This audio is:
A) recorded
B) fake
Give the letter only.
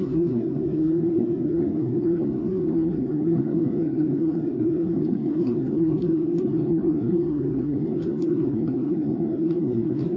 B